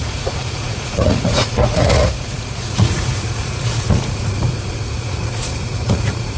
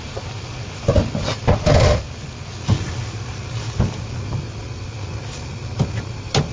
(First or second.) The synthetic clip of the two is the first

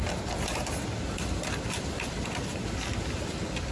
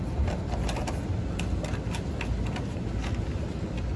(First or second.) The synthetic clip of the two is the first